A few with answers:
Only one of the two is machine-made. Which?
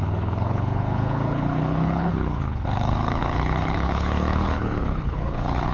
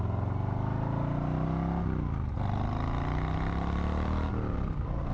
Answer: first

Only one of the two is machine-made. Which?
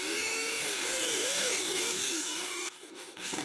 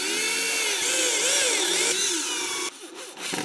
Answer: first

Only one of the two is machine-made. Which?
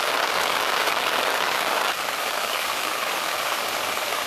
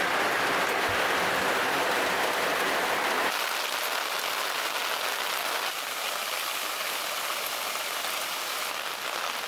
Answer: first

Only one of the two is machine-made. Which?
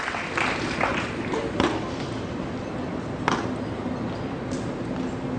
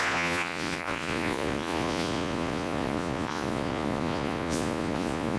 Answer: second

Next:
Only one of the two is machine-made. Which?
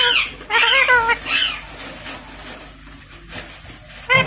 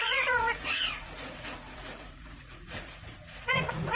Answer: second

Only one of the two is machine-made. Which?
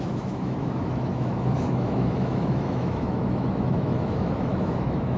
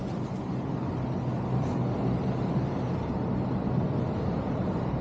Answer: first